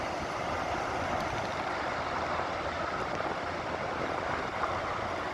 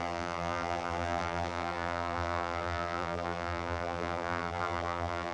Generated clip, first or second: second